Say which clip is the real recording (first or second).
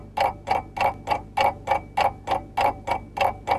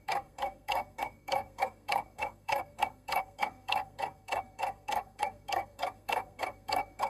first